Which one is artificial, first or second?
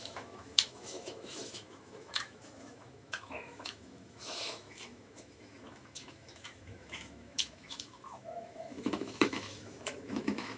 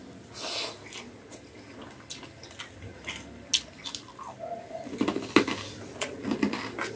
first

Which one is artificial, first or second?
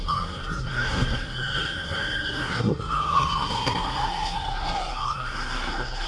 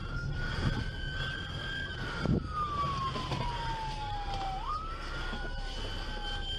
first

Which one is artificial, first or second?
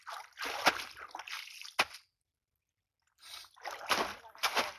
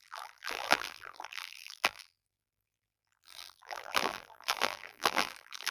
second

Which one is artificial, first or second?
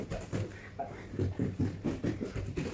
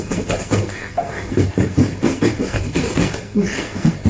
second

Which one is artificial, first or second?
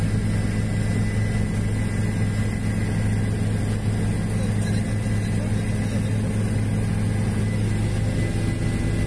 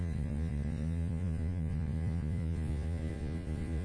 second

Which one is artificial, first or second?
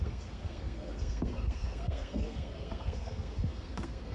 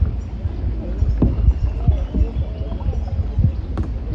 first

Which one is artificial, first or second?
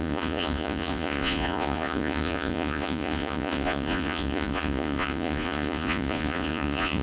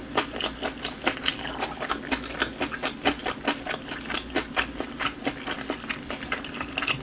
first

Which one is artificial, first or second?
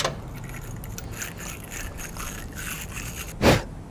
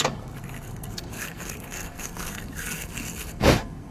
second